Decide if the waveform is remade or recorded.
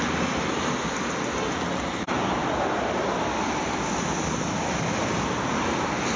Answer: recorded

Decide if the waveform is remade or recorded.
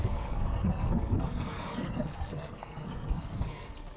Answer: remade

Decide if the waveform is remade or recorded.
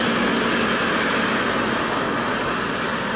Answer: recorded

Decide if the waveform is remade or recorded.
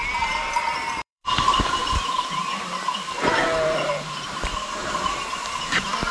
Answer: remade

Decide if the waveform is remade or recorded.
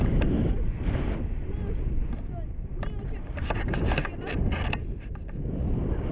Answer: recorded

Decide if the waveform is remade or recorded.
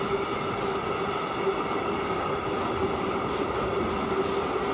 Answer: recorded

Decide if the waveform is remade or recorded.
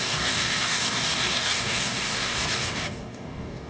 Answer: remade